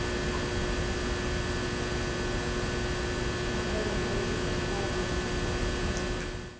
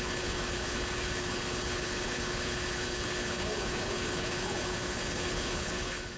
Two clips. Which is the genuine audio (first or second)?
first